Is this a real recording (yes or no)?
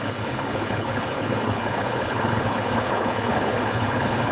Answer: no